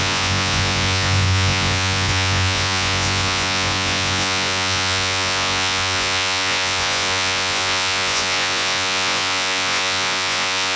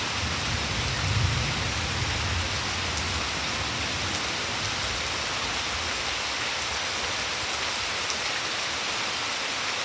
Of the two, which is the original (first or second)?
second